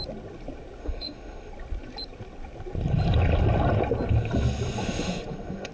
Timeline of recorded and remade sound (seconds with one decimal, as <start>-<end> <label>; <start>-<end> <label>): 0.0-0.8 recorded; 0.8-1.5 remade; 1.5-4.8 recorded; 4.8-5.7 remade